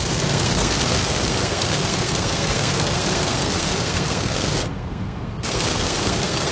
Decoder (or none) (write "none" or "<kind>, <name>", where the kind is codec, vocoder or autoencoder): codec, SNAC